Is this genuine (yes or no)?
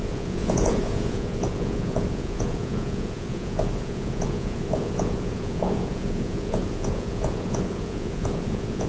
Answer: no